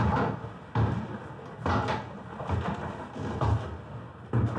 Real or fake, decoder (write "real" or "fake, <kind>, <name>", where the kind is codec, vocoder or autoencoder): real